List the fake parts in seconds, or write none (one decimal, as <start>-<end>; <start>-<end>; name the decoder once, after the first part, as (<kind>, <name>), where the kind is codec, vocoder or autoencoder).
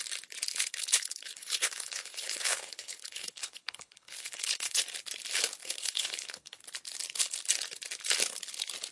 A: 0.5-4.8 (codec, HILCodec); 5.6-6.6